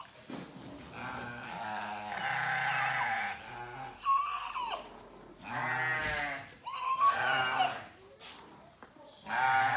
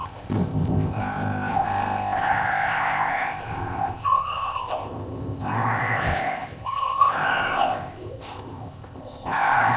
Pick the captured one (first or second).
first